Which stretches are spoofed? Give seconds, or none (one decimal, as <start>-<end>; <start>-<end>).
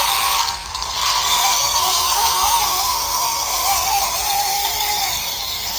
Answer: 0.0-5.8